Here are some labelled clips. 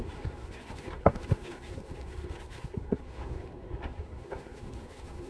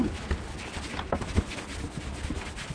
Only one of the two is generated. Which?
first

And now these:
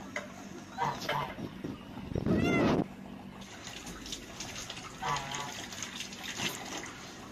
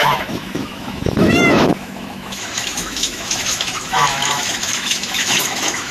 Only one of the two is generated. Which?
second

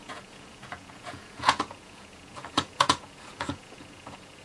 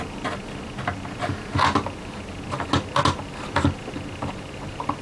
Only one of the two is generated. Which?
first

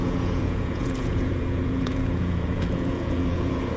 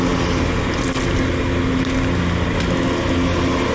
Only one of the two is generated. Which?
first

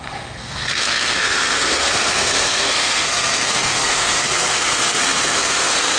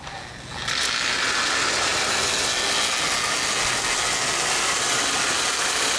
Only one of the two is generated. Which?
first